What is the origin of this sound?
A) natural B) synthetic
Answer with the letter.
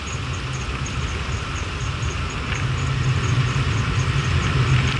A